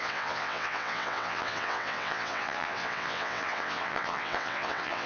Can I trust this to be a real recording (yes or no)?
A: no